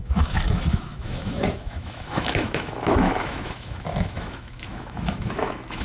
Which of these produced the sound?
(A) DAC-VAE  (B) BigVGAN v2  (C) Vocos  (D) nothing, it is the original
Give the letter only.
A